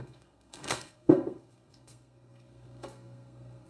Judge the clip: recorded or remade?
remade